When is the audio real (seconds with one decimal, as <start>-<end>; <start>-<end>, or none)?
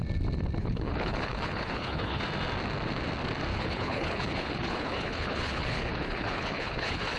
0.0-0.6; 2.2-3.5